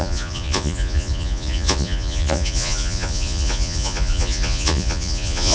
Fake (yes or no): yes